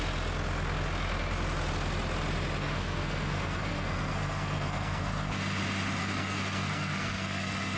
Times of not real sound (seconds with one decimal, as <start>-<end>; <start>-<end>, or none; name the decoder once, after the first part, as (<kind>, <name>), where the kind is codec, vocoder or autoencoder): 2.6-5.4 (codec, SNAC); 6.0-7.8